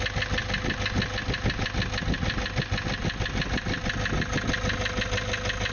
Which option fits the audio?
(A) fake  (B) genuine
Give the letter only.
B